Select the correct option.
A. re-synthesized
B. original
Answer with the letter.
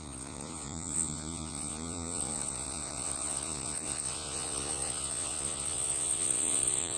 A